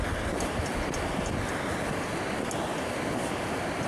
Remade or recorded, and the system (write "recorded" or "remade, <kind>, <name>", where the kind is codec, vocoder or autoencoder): recorded